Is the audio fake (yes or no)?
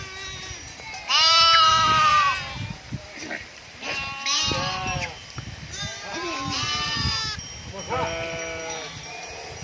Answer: yes